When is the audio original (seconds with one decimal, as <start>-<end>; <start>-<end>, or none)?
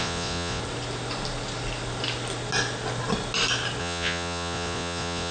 0.6-3.8